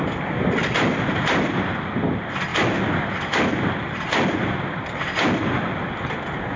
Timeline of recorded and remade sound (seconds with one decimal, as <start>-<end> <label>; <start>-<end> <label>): 0.0-6.6 recorded